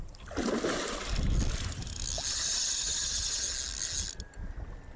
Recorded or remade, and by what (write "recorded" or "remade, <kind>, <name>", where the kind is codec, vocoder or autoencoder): recorded